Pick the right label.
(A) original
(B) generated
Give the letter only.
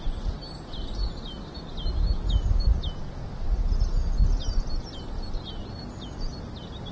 A